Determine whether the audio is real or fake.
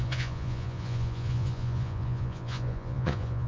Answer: fake